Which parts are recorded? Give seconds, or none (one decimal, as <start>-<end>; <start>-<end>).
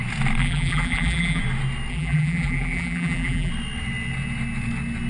0.0-0.4; 1.4-1.9; 3.5-5.1